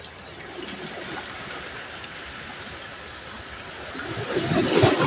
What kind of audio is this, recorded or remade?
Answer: recorded